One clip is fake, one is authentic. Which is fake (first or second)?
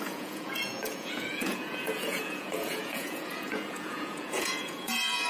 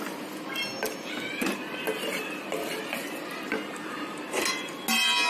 first